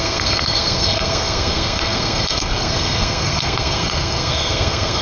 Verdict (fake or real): fake